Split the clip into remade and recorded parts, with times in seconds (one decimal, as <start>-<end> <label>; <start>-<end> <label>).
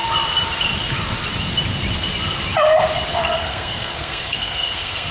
0.0-3.1 recorded; 3.1-5.1 remade